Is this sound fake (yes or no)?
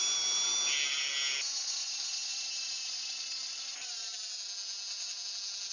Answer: no